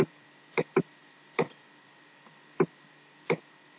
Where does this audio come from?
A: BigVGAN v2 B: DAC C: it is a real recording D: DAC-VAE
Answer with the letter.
A